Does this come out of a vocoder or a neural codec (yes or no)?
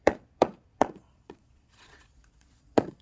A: yes